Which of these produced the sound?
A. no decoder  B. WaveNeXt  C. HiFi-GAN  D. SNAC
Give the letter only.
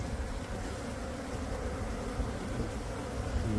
A